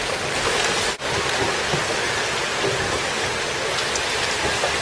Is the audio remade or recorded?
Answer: recorded